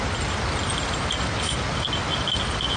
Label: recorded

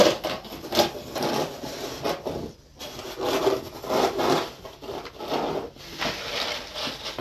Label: recorded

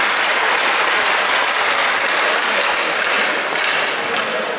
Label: recorded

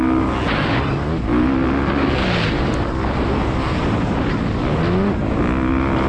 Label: recorded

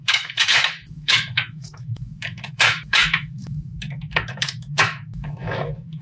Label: remade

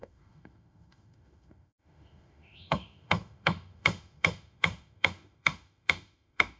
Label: remade